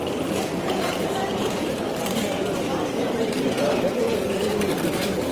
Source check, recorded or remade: remade